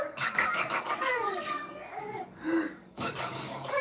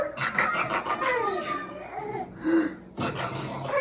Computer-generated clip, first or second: first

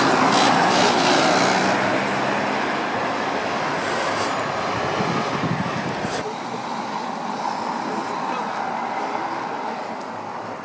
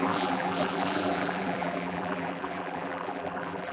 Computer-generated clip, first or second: second